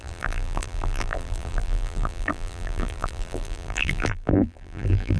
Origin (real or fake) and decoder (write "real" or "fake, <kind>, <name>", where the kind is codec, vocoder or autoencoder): fake, vocoder, BigVGAN v2